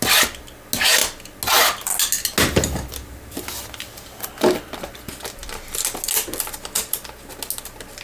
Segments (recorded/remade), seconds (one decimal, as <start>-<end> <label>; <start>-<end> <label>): 0.0-8.0 recorded